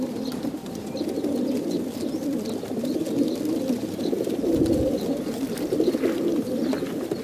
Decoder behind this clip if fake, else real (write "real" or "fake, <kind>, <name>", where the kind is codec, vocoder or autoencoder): real